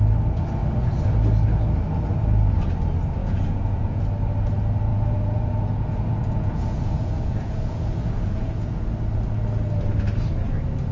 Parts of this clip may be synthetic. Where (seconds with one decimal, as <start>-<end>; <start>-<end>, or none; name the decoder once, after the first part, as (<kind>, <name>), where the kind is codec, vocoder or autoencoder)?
3.2-4.0 (vocoder, Vocos); 4.9-8.8